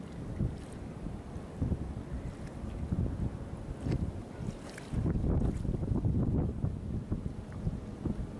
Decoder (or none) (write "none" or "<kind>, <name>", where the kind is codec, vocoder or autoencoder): none